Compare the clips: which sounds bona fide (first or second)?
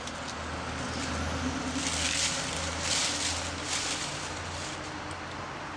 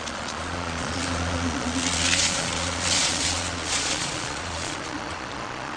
first